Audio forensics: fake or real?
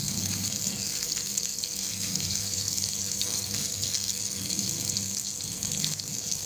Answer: fake